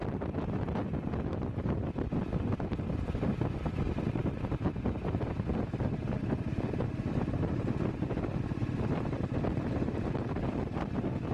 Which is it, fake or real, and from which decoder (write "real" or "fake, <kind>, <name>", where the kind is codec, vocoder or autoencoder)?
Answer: fake, vocoder, BigVGAN v2